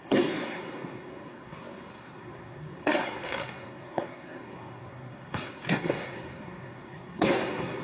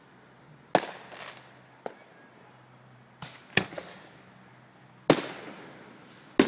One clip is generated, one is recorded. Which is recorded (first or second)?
second